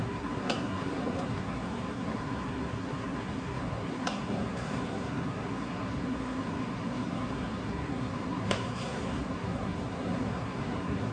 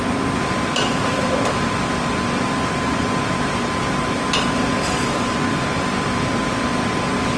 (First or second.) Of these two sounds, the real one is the second